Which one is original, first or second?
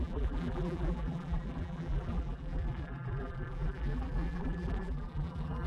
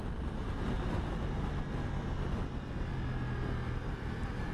second